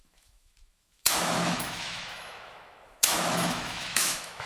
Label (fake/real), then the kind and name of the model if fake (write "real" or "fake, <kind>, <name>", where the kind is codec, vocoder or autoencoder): fake, autoencoder, DAC-VAE